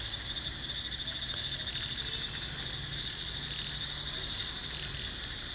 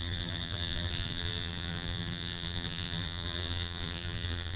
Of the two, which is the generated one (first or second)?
second